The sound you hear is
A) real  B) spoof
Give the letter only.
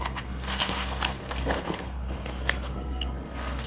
B